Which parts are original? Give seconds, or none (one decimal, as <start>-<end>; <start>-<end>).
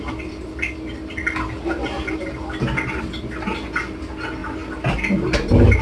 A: 0.0-5.8